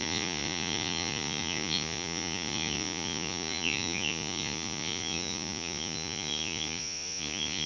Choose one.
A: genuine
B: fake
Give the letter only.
B